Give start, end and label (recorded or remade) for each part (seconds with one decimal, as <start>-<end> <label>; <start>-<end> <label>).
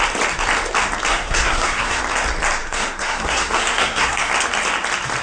0.0-1.1 recorded; 1.1-2.0 remade; 2.0-2.6 recorded; 2.6-4.3 remade; 4.3-5.2 recorded